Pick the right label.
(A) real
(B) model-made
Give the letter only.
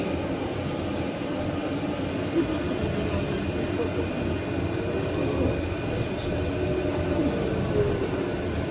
A